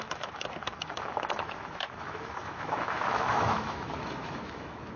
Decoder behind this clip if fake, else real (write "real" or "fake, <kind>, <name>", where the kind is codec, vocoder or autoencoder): fake, autoencoder, DAC-VAE